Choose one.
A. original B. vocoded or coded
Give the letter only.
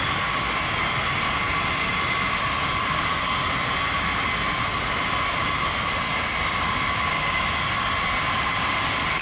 A